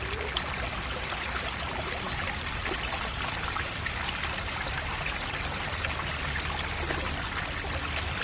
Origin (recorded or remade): recorded